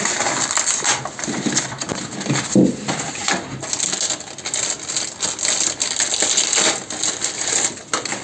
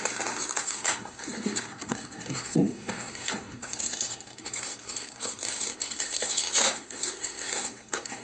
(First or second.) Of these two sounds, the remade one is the second